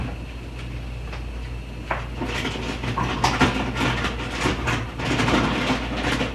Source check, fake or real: real